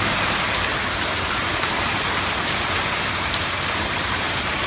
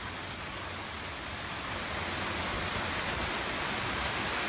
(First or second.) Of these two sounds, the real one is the second